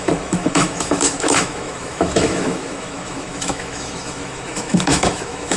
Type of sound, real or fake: fake